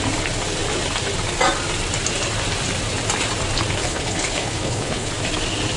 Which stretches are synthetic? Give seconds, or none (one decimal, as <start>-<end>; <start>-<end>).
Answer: 3.8-5.1